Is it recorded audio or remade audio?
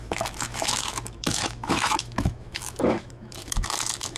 remade